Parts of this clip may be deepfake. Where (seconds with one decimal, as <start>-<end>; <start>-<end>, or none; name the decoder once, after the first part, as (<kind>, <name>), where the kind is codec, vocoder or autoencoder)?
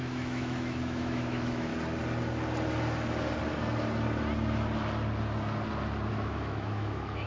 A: 0.0-1.7 (autoencoder, DAC-VAE); 6.1-7.3